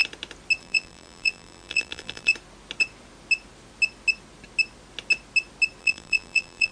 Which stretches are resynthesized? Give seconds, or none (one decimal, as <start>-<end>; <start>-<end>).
0.6-2.3; 5.8-6.7

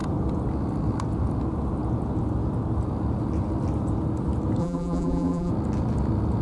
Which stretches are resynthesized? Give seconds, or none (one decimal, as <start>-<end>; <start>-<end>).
4.6-5.5